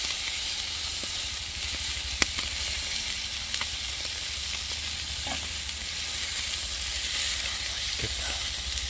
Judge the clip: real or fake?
real